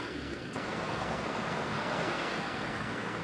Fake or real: fake